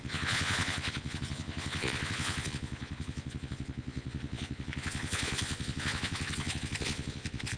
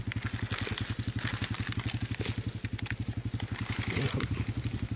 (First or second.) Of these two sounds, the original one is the second